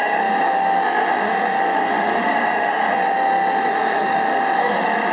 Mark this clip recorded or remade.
remade